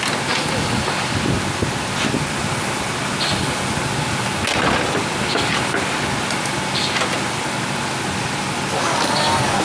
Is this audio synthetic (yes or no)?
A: no